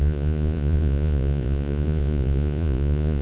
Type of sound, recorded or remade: remade